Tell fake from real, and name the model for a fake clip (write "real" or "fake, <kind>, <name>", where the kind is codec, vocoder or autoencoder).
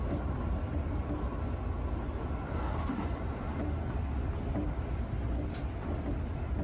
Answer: real